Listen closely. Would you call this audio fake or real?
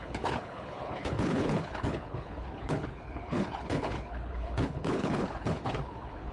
fake